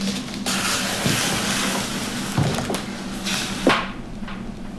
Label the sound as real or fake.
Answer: real